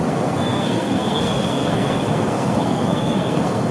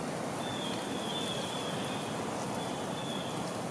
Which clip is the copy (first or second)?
first